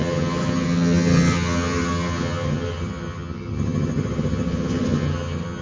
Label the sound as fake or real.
fake